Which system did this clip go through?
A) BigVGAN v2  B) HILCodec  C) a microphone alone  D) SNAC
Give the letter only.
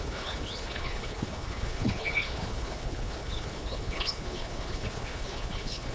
B